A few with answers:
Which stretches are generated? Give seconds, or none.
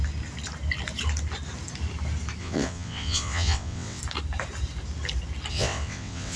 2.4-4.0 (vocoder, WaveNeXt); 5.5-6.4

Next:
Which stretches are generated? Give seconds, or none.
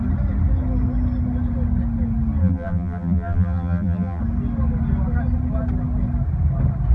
2.4-4.2 (vocoder, BigVGAN v2)